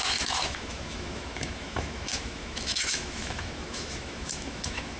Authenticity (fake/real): fake